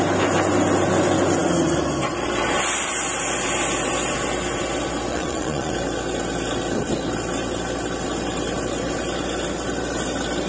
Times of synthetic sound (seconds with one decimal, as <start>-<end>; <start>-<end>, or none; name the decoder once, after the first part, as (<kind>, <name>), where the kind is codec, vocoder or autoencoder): 5.1-5.7 (vocoder, Vocos)